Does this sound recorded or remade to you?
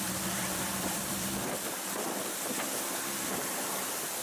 remade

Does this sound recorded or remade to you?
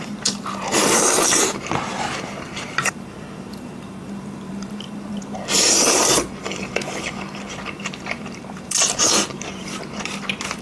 remade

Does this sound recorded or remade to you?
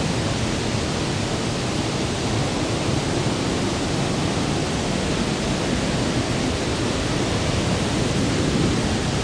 recorded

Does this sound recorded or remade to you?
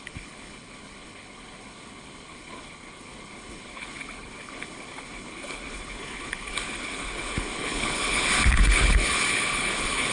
remade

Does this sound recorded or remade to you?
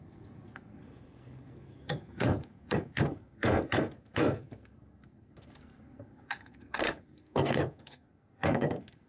remade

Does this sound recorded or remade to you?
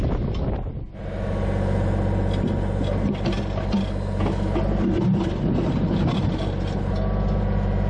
recorded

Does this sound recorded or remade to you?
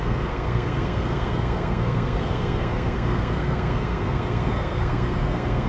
remade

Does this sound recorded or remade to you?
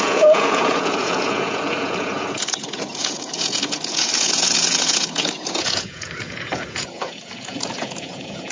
remade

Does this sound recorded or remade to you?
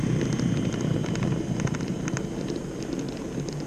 recorded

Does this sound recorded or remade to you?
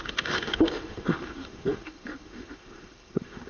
remade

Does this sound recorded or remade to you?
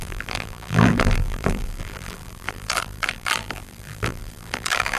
remade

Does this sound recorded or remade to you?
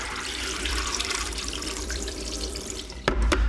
remade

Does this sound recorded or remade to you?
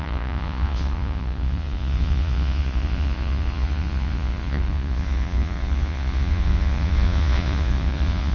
remade